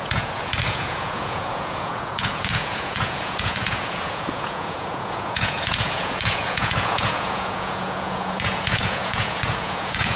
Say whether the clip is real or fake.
fake